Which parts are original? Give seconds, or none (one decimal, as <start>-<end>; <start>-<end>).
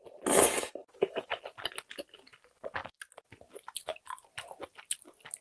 0.0-5.4